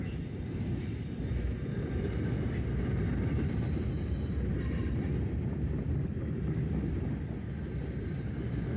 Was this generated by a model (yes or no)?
no